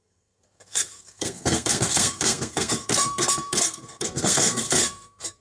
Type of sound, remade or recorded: remade